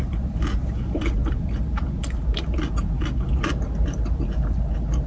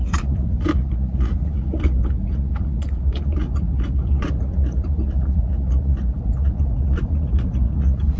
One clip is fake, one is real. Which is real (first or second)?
first